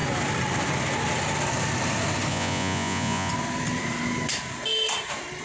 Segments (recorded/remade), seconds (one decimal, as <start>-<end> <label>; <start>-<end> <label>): 0.0-2.3 recorded; 2.3-3.3 remade; 3.3-5.4 recorded